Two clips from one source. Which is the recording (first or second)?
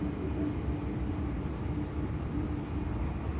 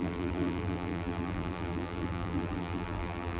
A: first